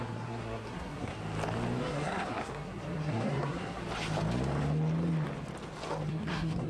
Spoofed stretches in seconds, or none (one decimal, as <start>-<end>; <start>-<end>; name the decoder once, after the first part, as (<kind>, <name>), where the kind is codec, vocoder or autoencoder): 0.0-1.2 (codec, SNAC); 1.8-3.8; 6.1-6.7